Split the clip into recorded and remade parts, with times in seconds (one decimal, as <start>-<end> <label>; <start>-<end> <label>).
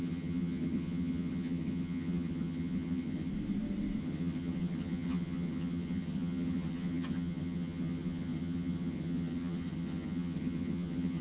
0.0-3.3 remade; 3.3-4.0 recorded; 4.0-11.2 remade